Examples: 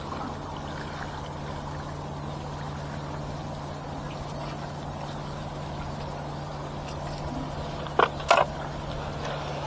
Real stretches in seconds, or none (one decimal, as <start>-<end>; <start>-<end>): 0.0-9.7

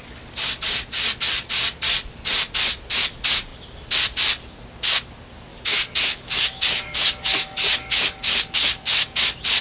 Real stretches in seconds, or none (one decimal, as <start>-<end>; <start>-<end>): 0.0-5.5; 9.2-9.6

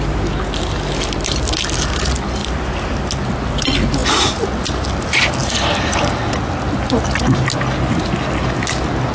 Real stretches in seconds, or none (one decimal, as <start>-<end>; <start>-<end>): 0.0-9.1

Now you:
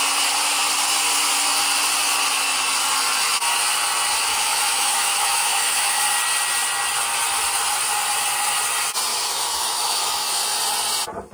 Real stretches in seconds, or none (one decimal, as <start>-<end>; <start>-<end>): 0.0-4.3; 6.0-9.1; 10.4-11.3

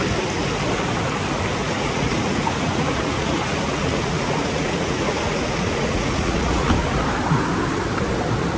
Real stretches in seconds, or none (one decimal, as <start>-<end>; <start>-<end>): 0.0-1.6; 6.7-8.6

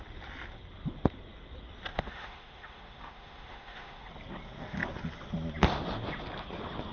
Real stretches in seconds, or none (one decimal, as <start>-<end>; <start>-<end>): 0.0-1.9; 4.1-6.9

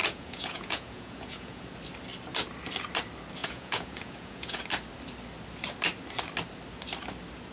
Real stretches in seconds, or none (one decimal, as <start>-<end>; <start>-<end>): 1.6-3.4; 4.6-7.5

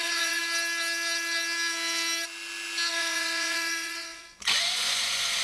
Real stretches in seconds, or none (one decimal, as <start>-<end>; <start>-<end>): 0.4-2.9